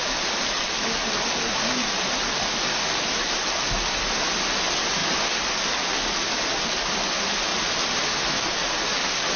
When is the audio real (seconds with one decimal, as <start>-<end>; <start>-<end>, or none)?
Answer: 0.0-9.4